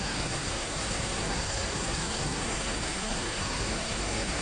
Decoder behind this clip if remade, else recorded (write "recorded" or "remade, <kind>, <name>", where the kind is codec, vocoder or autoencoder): remade, codec, SNAC